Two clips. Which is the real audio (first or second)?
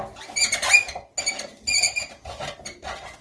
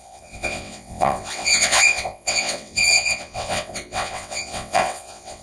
first